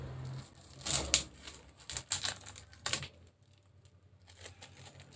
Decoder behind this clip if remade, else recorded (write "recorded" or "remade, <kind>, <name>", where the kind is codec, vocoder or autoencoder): recorded